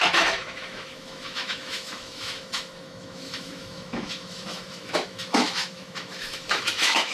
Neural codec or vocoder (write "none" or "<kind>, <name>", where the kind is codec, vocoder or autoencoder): autoencoder, DAC-VAE